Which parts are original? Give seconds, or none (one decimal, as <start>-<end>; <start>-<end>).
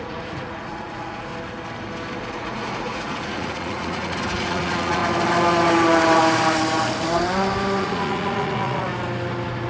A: 1.3-2.3; 5.0-7.8; 8.9-9.7